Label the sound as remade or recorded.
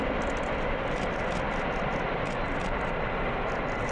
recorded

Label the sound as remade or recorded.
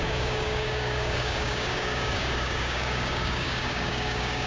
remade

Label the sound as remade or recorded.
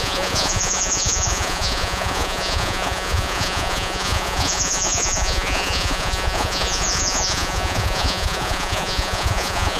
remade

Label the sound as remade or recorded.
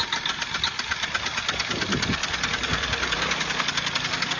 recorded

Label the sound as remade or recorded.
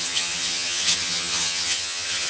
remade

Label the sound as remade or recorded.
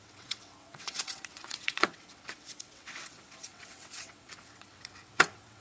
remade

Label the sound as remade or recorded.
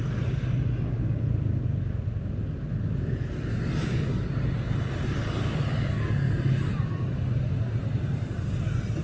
recorded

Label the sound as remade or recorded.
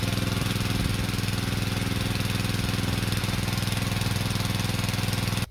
recorded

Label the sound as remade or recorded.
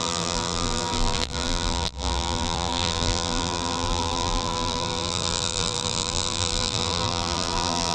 remade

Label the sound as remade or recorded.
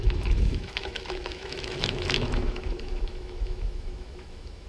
remade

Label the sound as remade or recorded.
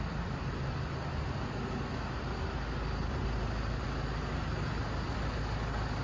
recorded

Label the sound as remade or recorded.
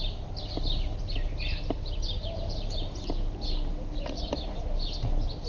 recorded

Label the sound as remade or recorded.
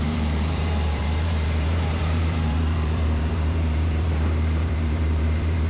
remade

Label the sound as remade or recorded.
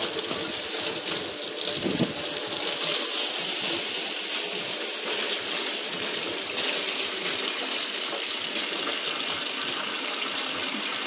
recorded